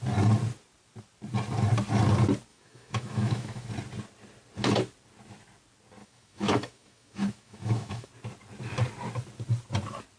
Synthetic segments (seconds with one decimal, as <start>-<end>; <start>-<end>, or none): 2.5-3.7; 6.0-8.1